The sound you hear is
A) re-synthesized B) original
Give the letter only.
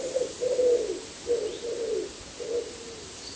B